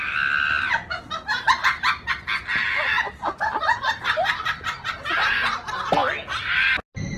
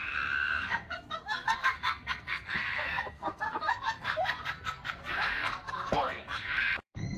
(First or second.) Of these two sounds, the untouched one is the first